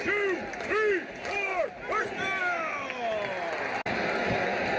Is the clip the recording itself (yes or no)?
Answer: yes